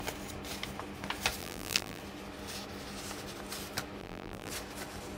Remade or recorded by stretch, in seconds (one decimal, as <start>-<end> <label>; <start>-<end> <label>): 0.0-1.4 recorded; 1.4-2.0 remade; 2.0-4.0 recorded; 4.0-4.5 remade; 4.5-5.2 recorded